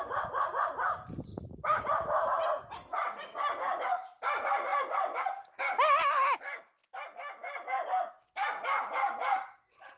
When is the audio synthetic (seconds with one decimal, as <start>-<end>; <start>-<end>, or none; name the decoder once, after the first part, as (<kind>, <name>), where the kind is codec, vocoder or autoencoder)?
1.3-1.8 (codec, DAC)

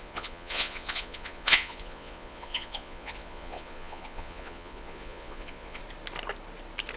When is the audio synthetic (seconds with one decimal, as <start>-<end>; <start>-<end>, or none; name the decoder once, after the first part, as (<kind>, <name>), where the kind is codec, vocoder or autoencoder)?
0.0-5.8 (vocoder, Vocos)

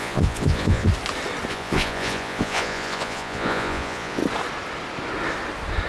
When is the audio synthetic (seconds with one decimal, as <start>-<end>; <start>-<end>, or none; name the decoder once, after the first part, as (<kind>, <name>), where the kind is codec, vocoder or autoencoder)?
0.0-0.9 (vocoder, Vocos); 1.5-4.2

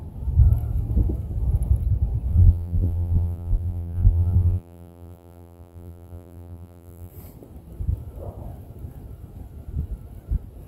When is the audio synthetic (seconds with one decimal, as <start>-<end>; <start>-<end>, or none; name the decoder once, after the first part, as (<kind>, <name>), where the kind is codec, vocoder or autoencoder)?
2.3-7.1 (vocoder, BigVGAN v2)